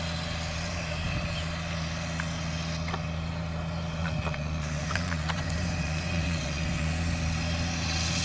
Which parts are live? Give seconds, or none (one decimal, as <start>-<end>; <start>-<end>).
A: 0.0-4.0; 6.9-8.2